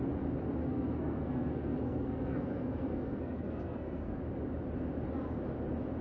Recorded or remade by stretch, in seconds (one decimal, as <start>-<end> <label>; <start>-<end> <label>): 0.0-0.6 recorded; 0.6-4.2 remade; 4.2-6.0 recorded